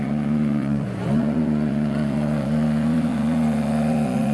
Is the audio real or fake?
fake